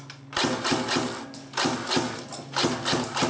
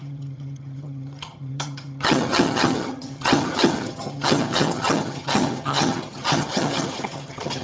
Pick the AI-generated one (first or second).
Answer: second